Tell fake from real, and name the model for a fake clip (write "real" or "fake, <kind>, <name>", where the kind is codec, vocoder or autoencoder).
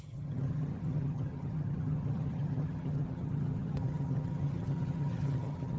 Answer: fake, vocoder, HiFi-GAN